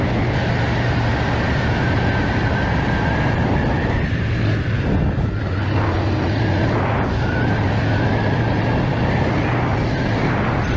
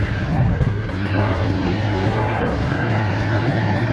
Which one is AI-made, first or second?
second